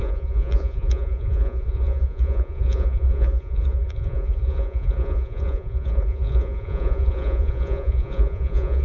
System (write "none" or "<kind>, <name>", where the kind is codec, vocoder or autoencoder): vocoder, Vocos